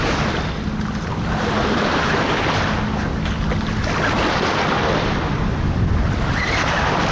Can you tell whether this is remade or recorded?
recorded